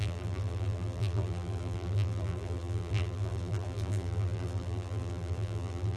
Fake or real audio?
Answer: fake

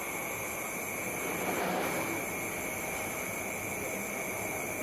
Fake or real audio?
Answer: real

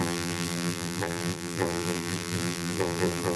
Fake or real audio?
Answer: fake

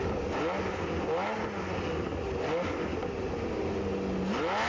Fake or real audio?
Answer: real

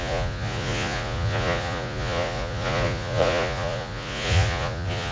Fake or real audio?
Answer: fake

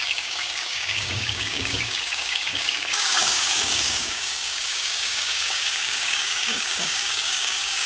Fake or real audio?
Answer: fake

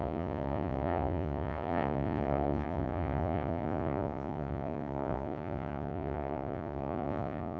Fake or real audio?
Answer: fake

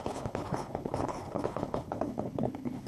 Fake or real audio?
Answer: fake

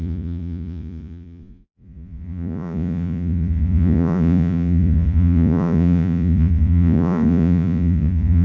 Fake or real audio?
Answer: fake